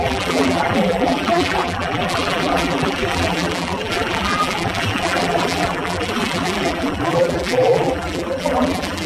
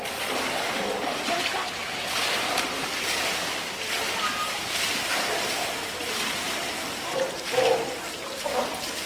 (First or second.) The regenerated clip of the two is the first